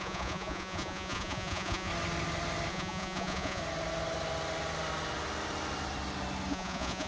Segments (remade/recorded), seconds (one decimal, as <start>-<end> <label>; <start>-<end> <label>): 0.0-1.9 remade; 1.9-2.7 recorded; 2.7-3.6 remade; 3.6-6.5 recorded; 6.5-7.1 remade